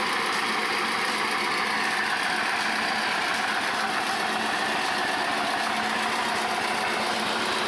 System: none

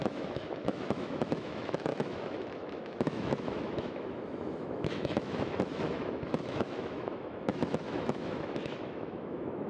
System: autoencoder, DAC-VAE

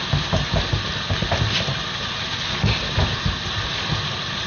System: none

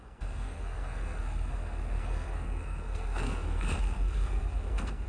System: codec, SNAC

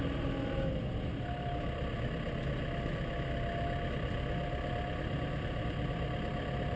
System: none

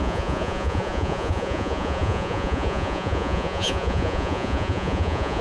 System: vocoder, Vocos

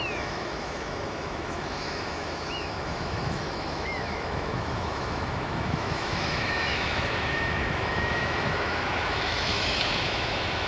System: autoencoder, DAC-VAE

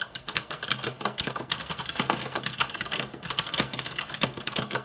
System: codec, SNAC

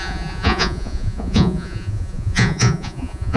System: vocoder, Vocos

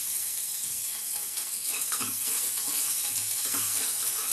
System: codec, SNAC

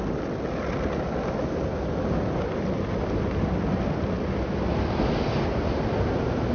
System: none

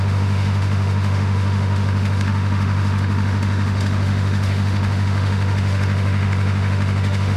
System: autoencoder, DAC-VAE